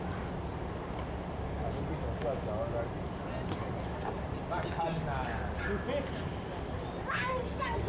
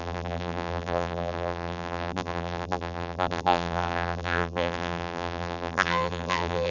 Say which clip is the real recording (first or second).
first